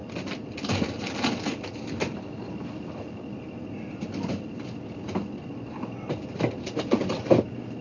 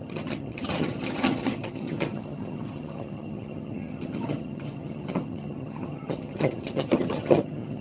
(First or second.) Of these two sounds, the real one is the first